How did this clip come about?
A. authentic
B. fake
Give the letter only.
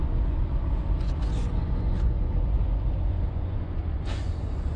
B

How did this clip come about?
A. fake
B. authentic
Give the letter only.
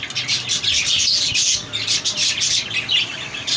B